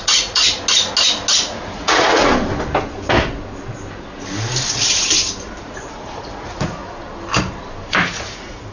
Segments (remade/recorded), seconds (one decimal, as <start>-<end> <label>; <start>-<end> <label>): 0.0-0.4 remade; 0.4-1.5 recorded; 1.5-2.3 remade; 2.3-5.6 recorded; 5.6-6.8 remade; 6.8-8.0 recorded; 8.0-8.7 remade